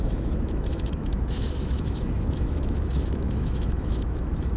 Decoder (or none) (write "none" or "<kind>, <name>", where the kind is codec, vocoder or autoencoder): autoencoder, DAC-VAE